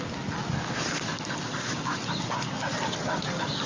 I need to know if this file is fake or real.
real